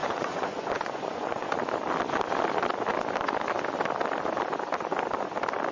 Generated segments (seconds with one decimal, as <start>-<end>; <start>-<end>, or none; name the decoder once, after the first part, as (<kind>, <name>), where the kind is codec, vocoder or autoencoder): 0.0-1.5 (vocoder, Vocos)